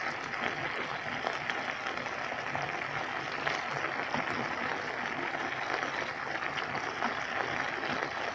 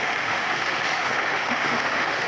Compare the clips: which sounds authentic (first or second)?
first